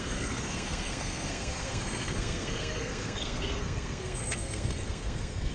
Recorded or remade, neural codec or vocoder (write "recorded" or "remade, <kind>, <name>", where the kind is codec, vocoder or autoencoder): remade, codec, SNAC